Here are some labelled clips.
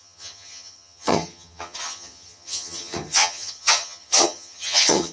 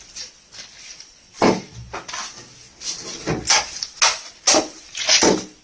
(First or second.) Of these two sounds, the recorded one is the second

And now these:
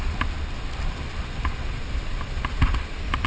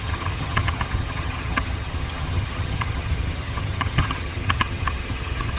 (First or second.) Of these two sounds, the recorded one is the first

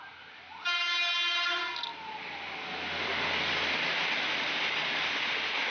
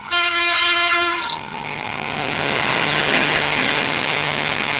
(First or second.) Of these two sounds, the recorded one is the first